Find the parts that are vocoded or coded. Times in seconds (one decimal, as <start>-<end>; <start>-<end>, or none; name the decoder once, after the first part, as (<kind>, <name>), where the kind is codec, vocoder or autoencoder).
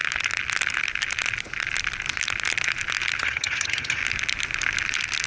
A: 3.2-4.0 (vocoder, HiFi-GAN)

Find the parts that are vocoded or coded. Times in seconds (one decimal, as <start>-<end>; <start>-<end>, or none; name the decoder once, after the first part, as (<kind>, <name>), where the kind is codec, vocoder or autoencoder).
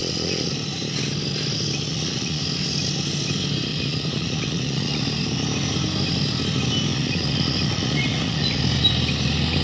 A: 0.0-0.5 (vocoder, Vocos); 1.9-2.4; 3.7-5.0; 6.9-8.6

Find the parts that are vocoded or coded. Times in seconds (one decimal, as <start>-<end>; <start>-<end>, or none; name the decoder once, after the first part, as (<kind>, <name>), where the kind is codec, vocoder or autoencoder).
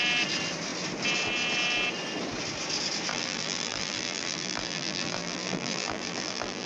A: 3.1-6.7 (vocoder, BigVGAN v2)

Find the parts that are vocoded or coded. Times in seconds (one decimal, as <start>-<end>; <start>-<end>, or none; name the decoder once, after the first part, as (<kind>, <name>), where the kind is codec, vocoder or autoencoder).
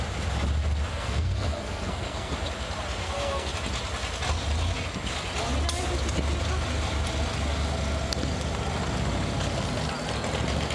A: 0.9-2.3 (codec, SNAC); 3.0-3.5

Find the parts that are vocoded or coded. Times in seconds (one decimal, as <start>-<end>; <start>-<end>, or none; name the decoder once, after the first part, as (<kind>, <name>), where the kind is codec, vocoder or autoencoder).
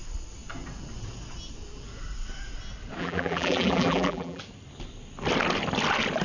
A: 3.0-4.4 (vocoder, BigVGAN v2)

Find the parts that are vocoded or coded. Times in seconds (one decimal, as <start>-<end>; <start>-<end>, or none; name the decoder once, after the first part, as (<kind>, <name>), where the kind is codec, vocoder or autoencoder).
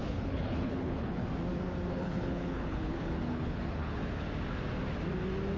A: 0.0-1.2 (codec, HILCodec); 1.9-4.0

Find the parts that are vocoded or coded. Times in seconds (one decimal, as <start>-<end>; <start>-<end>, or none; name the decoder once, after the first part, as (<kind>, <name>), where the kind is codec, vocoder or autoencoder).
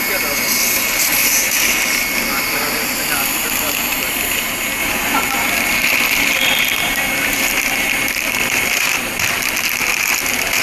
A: 4.8-8.8 (vocoder, BigVGAN v2)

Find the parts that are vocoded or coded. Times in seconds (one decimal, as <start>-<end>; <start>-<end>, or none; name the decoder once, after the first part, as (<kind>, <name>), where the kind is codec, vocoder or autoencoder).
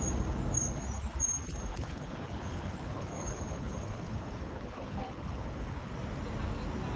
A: 1.7-5.9 (codec, HILCodec)